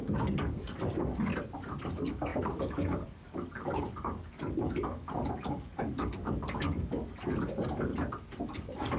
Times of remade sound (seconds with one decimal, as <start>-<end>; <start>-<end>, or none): 0.0-1.3; 1.8-7.9; 8.4-9.0